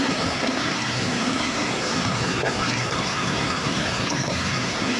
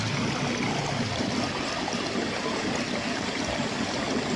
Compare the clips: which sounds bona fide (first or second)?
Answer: second